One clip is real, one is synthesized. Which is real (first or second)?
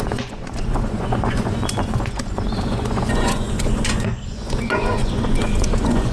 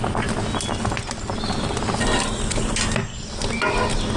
second